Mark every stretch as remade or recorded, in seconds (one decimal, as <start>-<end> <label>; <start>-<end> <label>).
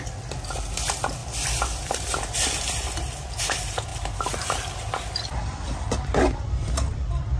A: 0.0-7.4 recorded